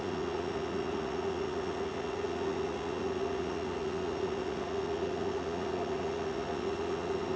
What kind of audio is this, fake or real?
fake